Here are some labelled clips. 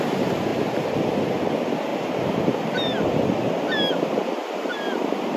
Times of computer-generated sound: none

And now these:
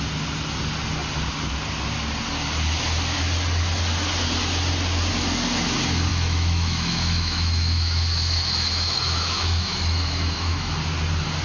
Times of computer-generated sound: 6.1-10.7 (autoencoder, DAC-VAE)